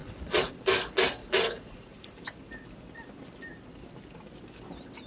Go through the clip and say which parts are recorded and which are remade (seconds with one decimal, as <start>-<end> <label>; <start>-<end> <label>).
0.0-0.5 remade; 0.5-1.2 recorded; 1.2-2.1 remade; 2.1-5.1 recorded